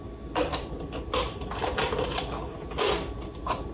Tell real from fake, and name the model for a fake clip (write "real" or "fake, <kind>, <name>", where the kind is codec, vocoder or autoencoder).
real